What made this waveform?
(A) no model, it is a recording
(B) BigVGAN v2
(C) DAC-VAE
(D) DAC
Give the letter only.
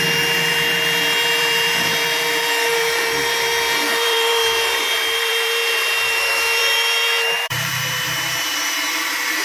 B